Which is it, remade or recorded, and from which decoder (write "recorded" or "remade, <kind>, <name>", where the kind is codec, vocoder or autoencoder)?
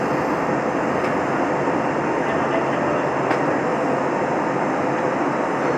recorded